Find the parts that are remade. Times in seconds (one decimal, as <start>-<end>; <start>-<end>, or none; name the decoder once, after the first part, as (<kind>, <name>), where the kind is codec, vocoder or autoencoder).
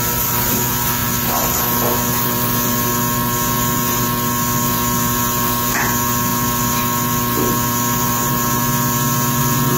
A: none